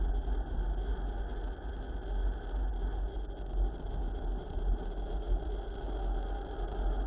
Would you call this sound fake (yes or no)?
no